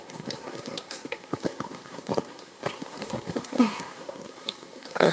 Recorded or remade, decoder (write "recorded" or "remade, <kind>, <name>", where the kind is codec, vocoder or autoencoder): remade, codec, SNAC